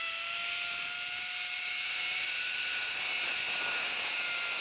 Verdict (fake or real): real